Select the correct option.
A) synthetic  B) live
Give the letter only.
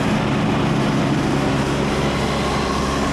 B